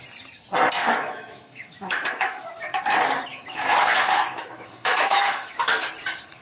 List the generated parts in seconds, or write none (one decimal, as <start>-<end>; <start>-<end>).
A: 0.8-2.8; 3.3-5.9